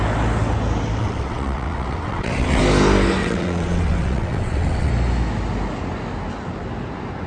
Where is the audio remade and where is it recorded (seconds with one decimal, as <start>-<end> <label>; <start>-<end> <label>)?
0.0-1.0 recorded; 1.0-2.6 remade; 2.6-3.2 recorded; 3.2-4.9 remade; 4.9-7.3 recorded